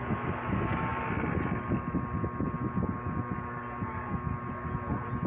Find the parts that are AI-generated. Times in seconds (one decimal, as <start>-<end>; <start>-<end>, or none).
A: none